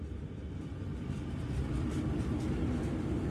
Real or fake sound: real